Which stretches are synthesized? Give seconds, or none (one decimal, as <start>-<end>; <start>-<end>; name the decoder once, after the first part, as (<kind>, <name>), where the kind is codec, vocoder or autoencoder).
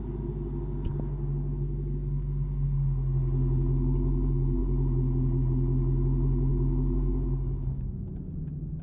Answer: 6.5-8.2 (codec, DAC)